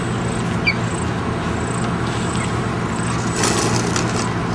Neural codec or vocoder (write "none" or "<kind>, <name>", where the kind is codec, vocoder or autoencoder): none